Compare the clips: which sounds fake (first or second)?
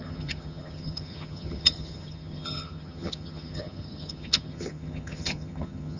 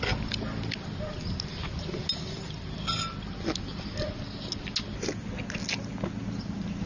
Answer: first